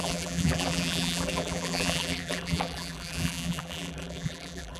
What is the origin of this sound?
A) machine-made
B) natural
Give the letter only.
A